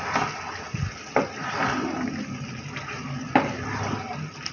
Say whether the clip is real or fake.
real